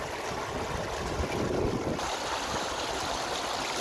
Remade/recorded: recorded